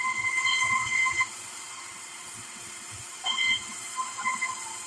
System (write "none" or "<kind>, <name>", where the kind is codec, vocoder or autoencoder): vocoder, WaveNeXt